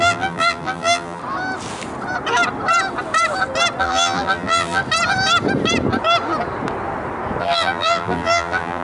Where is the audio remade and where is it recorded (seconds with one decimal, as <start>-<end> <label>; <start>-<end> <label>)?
0.0-1.2 remade; 1.2-3.8 recorded; 3.8-4.8 remade; 4.8-7.4 recorded; 7.4-8.8 remade